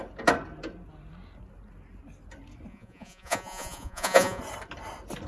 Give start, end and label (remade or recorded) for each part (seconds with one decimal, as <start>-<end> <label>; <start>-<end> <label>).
0.0-2.7 recorded; 2.7-4.4 remade; 4.4-5.3 recorded